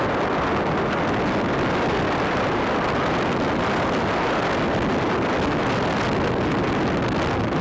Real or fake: real